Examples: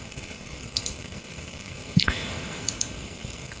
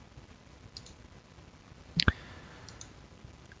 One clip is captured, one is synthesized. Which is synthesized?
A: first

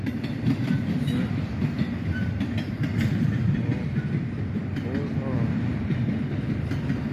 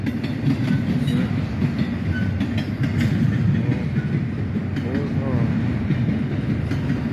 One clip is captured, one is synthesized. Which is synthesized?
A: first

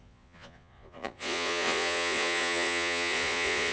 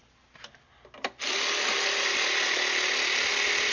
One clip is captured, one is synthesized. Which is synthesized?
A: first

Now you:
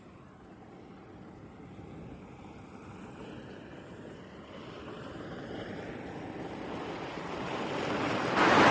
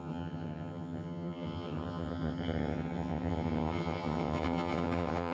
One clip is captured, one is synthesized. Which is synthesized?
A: second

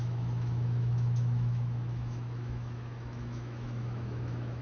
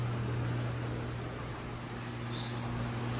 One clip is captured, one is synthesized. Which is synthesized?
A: first